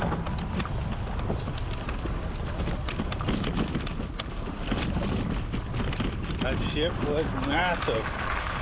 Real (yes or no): yes